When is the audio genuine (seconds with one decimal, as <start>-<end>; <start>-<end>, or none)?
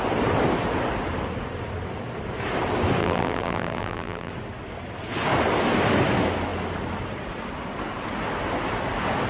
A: 0.0-3.0; 4.3-9.3